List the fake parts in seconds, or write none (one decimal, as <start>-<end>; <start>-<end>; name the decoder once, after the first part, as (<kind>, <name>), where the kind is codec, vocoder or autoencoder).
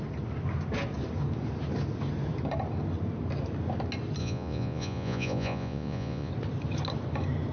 4.2-6.3 (vocoder, Vocos)